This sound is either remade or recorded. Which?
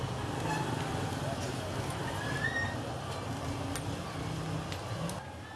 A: recorded